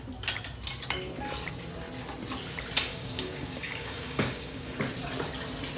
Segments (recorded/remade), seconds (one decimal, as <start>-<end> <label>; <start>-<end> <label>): 0.0-2.9 recorded; 2.9-4.8 remade; 4.8-5.8 recorded